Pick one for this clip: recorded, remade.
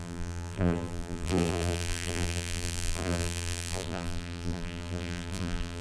remade